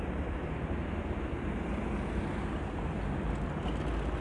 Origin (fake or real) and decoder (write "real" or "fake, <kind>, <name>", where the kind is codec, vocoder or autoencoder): real